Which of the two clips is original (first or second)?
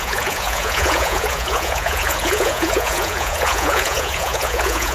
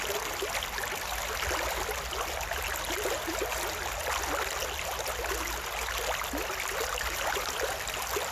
second